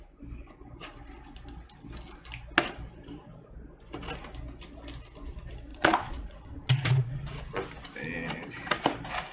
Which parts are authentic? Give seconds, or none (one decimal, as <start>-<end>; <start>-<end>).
0.0-5.7; 6.7-9.3